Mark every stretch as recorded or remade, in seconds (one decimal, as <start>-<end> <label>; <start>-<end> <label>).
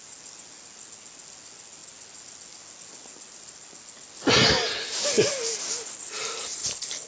0.0-7.1 recorded